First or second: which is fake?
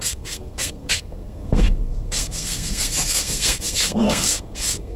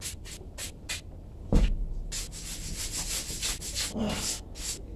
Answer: first